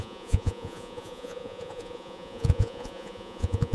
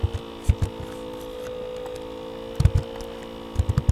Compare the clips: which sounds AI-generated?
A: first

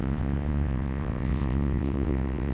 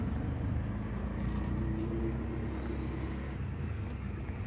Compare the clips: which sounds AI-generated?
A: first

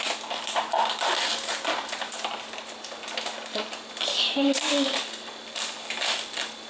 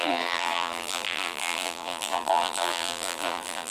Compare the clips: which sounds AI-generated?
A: second